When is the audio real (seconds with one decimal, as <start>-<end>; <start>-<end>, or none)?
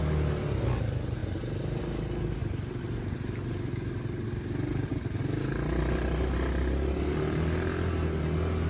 0.0-8.7